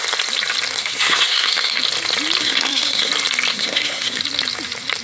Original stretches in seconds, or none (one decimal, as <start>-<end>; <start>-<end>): 0.0-0.8; 1.8-2.4; 3.1-3.5; 4.2-5.0